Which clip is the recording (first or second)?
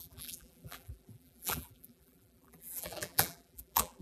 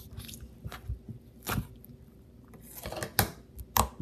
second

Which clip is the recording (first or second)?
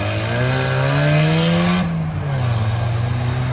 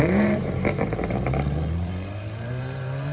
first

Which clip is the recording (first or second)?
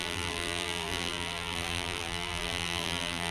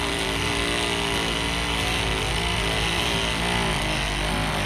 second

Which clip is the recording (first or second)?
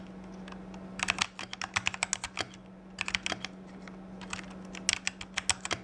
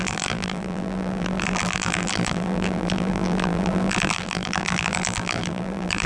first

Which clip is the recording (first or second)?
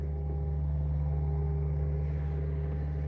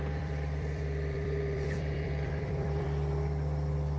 first